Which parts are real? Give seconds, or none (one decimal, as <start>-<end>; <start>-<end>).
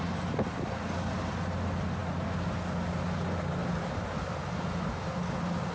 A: 0.0-5.7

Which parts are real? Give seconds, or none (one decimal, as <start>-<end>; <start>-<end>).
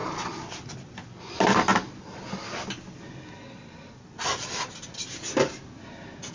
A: 0.0-6.3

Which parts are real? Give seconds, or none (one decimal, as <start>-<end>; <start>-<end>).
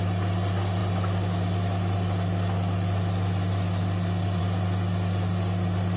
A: 0.0-6.0